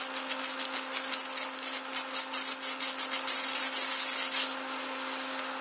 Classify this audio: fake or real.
real